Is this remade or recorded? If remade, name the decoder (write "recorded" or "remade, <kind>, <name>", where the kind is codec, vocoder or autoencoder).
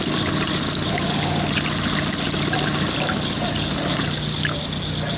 recorded